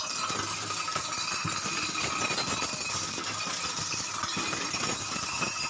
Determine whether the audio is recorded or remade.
recorded